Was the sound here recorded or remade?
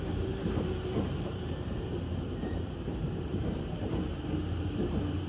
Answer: remade